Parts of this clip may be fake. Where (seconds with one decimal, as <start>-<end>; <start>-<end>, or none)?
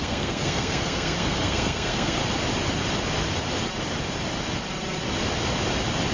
0.0-2.2